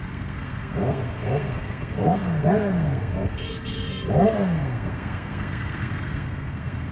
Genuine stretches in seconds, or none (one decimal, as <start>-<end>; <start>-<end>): none